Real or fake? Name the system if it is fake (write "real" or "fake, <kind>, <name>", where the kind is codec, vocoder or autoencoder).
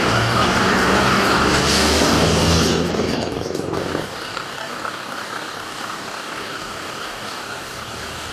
fake, codec, DAC